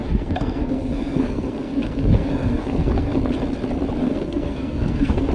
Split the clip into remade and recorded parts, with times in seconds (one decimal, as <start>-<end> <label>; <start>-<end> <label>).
0.0-3.2 remade; 3.2-4.0 recorded; 4.0-5.3 remade